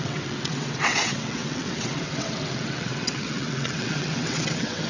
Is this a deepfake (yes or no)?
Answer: yes